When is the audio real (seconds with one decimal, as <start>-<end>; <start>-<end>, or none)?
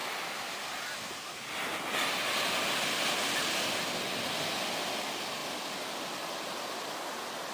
0.0-7.5